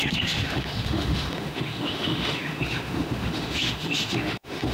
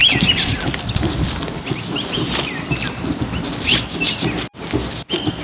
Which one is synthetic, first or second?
first